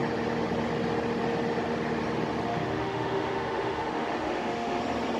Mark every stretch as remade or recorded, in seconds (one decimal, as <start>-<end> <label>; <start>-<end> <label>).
0.0-2.5 recorded; 2.5-4.8 remade; 4.8-5.2 recorded